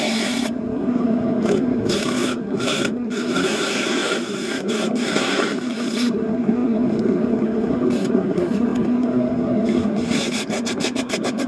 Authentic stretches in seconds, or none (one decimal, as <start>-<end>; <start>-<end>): none